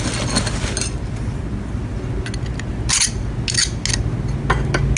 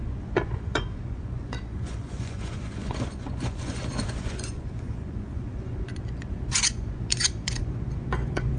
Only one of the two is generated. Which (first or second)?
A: second